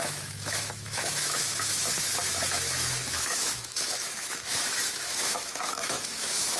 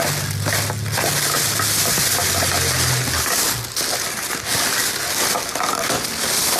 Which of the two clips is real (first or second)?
second